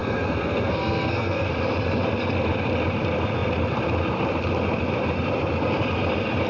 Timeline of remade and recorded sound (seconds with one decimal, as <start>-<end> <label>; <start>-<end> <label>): 0.0-1.5 remade; 1.5-6.5 recorded